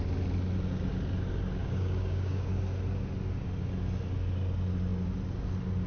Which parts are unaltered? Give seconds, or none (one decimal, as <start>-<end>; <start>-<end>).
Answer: 0.0-1.6; 2.5-5.9